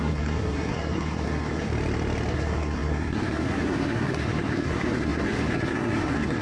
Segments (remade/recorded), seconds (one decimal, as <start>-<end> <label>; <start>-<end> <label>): 0.0-1.7 remade; 1.7-2.3 recorded; 2.3-6.4 remade